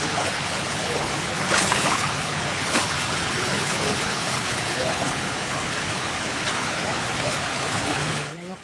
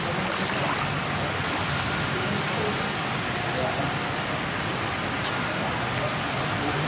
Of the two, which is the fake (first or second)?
first